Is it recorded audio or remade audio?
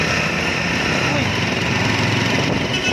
recorded